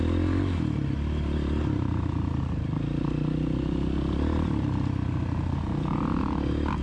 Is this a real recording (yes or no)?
yes